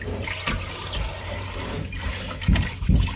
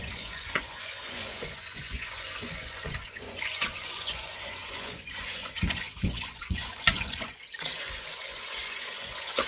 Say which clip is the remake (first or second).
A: second